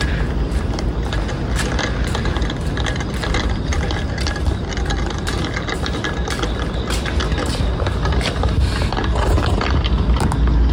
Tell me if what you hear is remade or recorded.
recorded